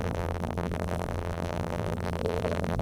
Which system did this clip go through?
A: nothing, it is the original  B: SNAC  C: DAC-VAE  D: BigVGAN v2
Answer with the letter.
D